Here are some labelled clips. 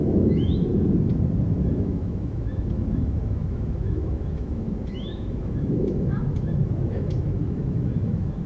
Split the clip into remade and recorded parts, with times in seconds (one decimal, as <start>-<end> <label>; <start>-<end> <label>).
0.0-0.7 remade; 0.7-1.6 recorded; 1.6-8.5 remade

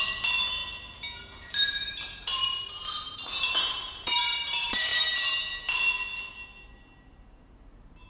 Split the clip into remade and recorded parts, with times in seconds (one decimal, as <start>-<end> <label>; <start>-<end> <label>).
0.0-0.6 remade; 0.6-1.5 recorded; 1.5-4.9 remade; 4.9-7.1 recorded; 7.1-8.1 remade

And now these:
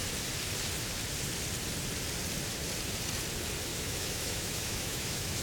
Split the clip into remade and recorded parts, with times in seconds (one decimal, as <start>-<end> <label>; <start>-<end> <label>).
0.0-3.7 recorded; 3.7-5.4 remade

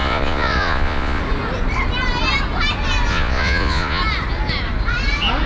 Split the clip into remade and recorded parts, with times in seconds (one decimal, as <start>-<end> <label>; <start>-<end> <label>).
0.0-1.2 remade; 1.2-3.1 recorded; 3.1-4.0 remade; 4.0-5.5 recorded